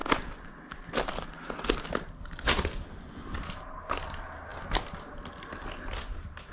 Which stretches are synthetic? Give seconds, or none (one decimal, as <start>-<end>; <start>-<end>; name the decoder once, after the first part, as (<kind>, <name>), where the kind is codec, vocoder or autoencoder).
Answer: 4.5-5.1 (vocoder, BigVGAN v2)

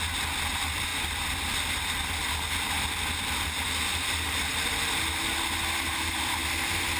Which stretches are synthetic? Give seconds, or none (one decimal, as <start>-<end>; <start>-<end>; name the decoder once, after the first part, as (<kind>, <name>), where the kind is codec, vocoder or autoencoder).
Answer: none

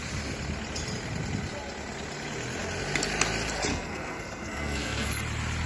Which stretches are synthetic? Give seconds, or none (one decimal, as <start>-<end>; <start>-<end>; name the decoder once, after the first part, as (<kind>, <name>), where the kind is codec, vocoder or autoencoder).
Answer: 3.7-5.1 (codec, SNAC)